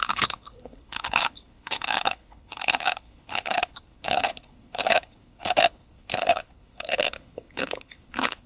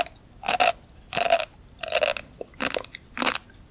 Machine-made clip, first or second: first